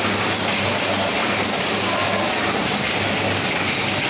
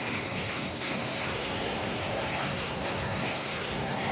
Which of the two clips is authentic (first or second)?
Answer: first